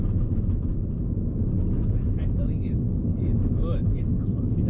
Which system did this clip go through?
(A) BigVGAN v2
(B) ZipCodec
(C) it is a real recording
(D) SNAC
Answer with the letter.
C